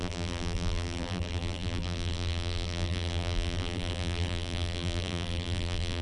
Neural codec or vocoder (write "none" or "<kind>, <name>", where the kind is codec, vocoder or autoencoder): vocoder, BigVGAN v2